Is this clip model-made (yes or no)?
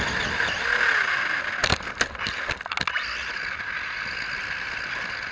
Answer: no